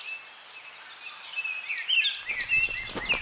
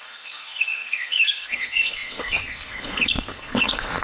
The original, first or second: first